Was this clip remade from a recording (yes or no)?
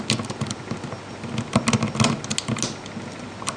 no